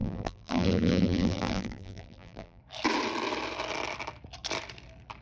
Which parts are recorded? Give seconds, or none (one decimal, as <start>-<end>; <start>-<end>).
2.6-5.2